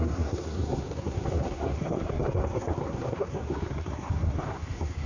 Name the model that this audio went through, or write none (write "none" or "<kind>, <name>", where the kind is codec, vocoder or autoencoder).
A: codec, SNAC